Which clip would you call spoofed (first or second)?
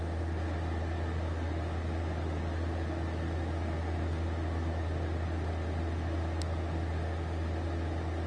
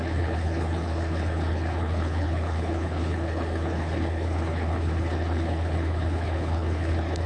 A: second